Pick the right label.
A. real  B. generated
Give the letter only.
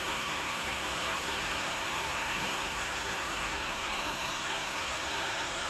B